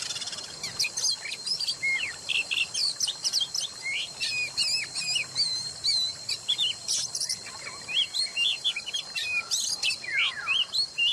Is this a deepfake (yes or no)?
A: no